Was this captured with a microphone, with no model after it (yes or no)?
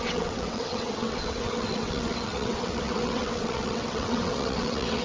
no